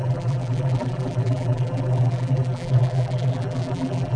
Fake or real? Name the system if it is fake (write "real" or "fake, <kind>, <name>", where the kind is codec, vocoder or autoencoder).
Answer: fake, vocoder, BigVGAN v2